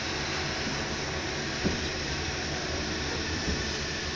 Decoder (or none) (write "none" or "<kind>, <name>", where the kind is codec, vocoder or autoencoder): none